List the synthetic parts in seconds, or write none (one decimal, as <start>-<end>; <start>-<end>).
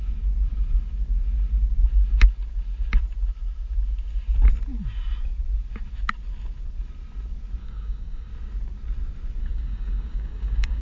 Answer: 7.6-8.3; 9.4-10.8